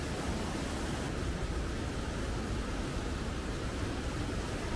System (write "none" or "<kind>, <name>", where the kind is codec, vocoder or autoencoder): none